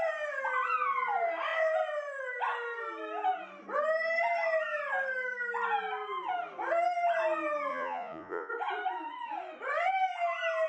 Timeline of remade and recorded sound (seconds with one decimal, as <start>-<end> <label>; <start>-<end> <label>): 0.0-7.7 recorded; 7.7-8.5 remade; 8.5-10.7 recorded